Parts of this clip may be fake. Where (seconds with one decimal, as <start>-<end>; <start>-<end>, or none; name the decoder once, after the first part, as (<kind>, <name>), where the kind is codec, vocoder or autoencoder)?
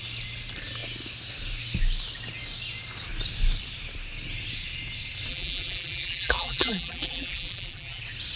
5.3-8.0 (vocoder, BigVGAN v2)